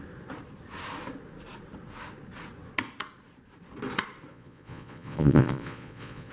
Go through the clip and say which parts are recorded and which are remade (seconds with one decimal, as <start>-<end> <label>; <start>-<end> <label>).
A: 0.0-4.3 recorded; 4.3-6.3 remade